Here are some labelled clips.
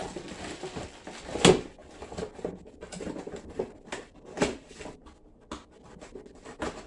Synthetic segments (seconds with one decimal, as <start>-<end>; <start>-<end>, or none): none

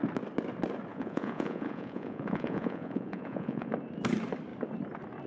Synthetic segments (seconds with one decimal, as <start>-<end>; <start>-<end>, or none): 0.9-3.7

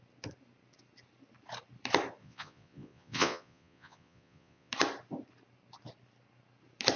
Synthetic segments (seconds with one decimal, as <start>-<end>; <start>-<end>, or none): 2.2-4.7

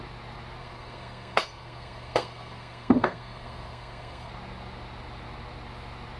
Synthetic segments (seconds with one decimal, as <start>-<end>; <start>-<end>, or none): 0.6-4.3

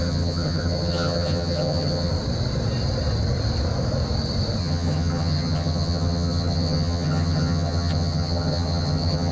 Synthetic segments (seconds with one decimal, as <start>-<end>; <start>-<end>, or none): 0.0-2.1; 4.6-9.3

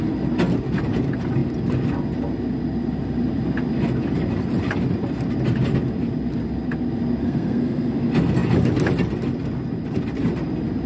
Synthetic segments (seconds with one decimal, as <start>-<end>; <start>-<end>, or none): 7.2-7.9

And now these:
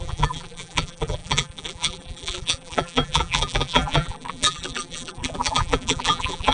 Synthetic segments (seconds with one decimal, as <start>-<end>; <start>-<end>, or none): 0.0-6.5